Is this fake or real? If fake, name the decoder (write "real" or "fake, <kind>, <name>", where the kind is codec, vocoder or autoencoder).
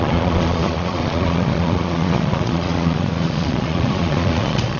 fake, vocoder, Vocos